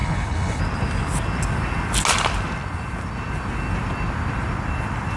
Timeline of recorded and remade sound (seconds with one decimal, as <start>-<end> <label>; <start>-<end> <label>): 0.0-0.6 remade; 0.6-5.2 recorded